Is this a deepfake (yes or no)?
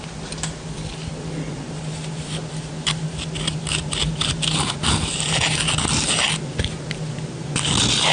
no